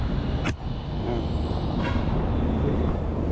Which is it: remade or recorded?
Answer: recorded